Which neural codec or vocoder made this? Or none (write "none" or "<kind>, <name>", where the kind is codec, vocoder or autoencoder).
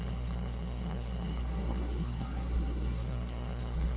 codec, SNAC